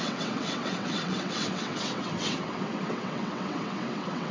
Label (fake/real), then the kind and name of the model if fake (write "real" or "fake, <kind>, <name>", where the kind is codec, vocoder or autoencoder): fake, vocoder, WaveNeXt